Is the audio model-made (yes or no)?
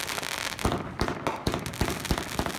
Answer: no